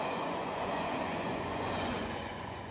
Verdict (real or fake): fake